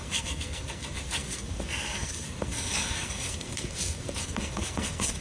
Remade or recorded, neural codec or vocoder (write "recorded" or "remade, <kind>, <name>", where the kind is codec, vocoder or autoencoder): remade, codec, SNAC